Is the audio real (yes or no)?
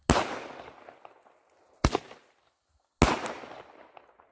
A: yes